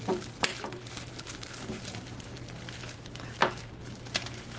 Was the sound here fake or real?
fake